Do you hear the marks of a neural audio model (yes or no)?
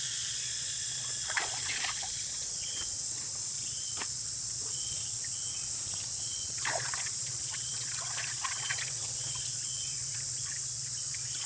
yes